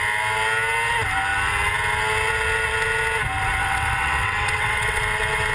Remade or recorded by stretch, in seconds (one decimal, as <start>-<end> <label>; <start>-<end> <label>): 0.0-3.6 recorded; 3.6-5.0 remade; 5.0-5.5 recorded